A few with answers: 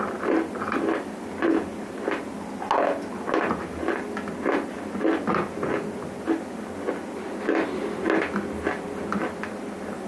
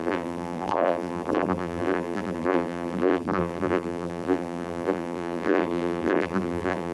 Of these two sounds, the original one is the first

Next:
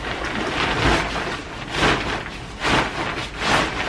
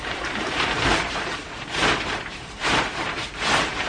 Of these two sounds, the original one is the first